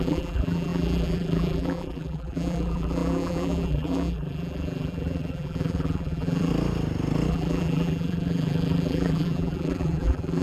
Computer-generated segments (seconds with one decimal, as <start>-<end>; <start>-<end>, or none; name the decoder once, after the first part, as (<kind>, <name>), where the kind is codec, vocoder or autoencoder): 0.0-6.5 (vocoder, BigVGAN v2); 7.3-10.4